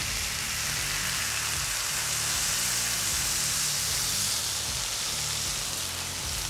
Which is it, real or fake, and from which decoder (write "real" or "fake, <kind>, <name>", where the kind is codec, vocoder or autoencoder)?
real